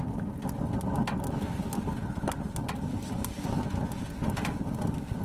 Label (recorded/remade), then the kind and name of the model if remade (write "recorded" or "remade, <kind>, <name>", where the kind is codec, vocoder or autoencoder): recorded